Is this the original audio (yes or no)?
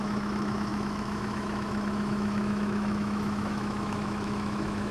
no